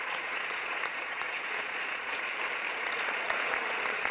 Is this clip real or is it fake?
fake